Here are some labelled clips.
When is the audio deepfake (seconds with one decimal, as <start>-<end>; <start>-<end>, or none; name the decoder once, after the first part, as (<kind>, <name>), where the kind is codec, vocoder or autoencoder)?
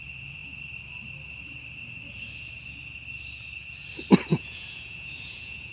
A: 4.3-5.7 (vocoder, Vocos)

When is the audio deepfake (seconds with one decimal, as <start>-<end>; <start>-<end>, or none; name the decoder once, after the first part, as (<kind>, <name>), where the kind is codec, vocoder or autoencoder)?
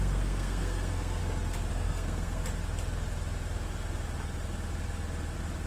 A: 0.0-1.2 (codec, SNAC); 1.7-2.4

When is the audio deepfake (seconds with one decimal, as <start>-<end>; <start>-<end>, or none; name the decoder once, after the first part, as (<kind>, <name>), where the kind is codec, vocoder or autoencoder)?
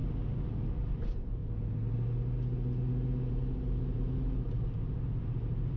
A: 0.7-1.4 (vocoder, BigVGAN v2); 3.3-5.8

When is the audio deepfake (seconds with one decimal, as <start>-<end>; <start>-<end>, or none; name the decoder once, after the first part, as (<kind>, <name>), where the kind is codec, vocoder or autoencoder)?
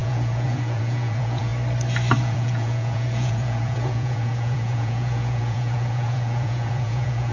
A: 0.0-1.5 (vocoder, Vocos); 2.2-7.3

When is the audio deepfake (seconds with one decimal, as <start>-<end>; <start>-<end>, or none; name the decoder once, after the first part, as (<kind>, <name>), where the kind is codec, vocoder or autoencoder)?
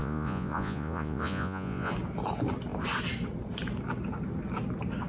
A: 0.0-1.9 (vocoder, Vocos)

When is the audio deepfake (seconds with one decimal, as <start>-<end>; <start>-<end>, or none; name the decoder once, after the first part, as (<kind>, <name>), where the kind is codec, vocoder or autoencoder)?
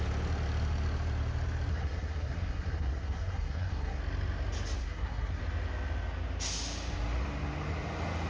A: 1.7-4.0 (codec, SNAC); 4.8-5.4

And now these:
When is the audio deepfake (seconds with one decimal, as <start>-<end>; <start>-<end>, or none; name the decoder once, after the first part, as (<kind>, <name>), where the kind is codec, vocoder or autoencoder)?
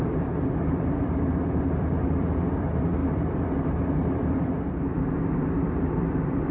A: 0.0-6.5 (vocoder, BigVGAN v2)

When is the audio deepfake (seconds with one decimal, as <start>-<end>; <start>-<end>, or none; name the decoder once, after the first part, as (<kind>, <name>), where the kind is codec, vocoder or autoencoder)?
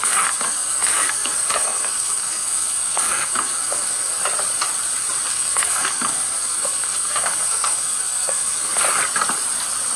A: 0.0-4.2 (codec, SNAC); 5.3-8.7